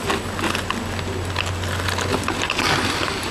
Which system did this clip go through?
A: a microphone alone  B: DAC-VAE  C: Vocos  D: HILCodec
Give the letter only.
A